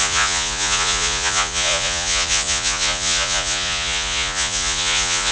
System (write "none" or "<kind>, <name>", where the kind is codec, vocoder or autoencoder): vocoder, Vocos